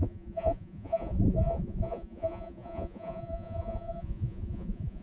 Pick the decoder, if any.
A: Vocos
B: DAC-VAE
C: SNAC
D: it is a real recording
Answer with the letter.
A